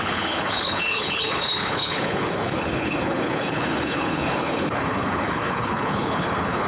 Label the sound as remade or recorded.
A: remade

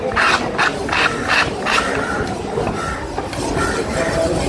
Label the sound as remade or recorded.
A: recorded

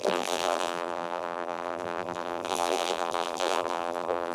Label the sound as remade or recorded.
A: remade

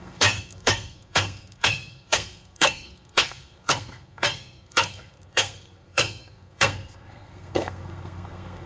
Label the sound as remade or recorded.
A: remade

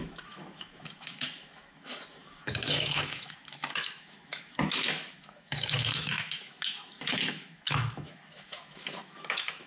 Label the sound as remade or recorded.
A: remade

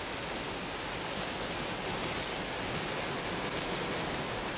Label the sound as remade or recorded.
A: recorded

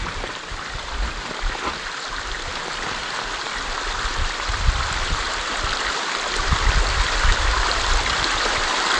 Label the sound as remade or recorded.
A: remade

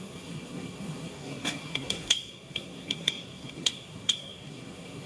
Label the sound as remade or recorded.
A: remade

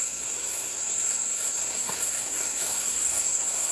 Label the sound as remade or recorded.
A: remade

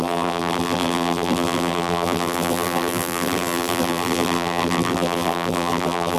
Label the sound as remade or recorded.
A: remade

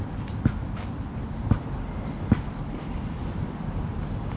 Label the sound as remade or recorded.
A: recorded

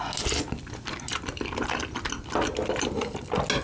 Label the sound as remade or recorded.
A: recorded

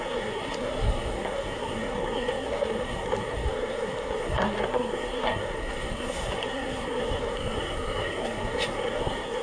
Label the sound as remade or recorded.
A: remade